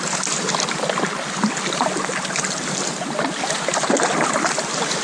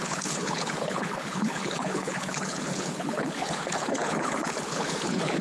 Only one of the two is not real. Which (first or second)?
second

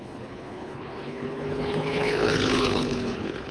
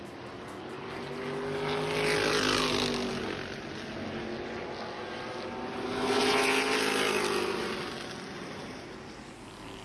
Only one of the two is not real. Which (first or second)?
first